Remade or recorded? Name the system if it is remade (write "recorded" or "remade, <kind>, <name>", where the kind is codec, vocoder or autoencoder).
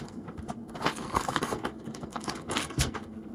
remade, codec, SNAC